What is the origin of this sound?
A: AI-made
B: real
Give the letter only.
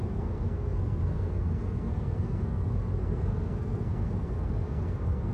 A